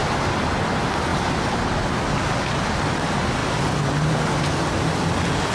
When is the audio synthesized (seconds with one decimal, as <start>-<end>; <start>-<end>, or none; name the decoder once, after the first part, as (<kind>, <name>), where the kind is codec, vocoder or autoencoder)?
3.4-4.7 (vocoder, BigVGAN v2)